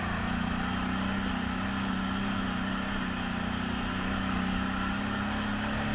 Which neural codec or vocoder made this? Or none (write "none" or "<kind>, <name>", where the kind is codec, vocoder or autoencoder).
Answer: none